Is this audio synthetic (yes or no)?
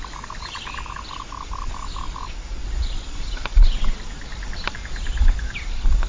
no